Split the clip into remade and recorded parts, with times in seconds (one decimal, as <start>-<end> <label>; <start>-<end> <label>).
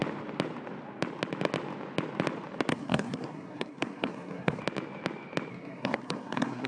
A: 0.0-2.7 recorded; 2.7-4.6 remade; 4.6-5.5 recorded; 5.5-6.7 remade